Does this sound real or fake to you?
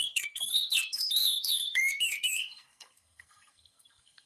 fake